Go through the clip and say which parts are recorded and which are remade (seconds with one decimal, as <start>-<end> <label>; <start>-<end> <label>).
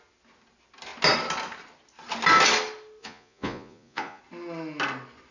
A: 0.0-3.0 recorded; 3.0-4.2 remade; 4.2-5.3 recorded